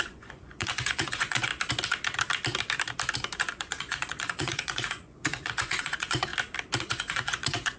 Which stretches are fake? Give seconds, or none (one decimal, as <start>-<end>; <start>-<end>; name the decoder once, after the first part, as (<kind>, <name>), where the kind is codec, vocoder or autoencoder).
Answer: 0.0-1.5 (vocoder, Vocos); 3.6-6.3; 6.8-7.8